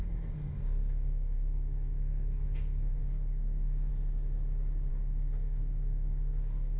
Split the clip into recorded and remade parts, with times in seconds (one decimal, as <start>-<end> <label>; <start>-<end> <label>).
0.0-3.9 remade; 3.9-4.9 recorded; 4.9-6.8 remade